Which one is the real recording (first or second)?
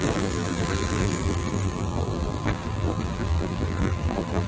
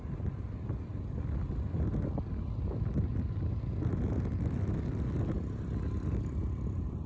second